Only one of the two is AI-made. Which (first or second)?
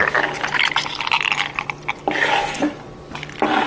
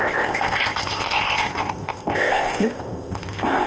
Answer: second